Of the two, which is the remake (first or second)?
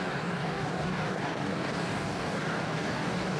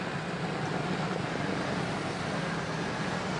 first